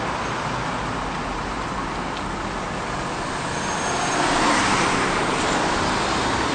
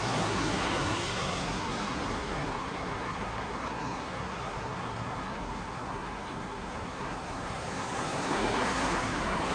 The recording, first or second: first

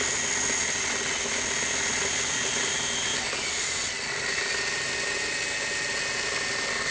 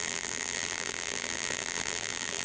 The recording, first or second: first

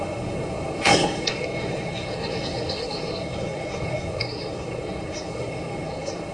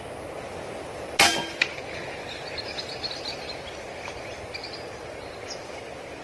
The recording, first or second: second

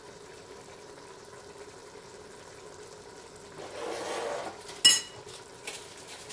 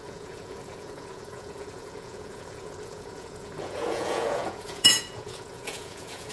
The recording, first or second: first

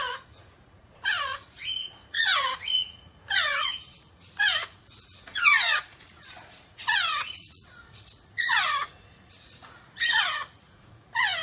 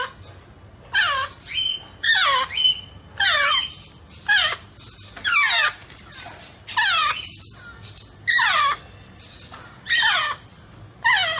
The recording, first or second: second